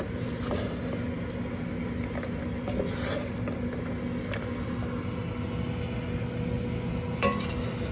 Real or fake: real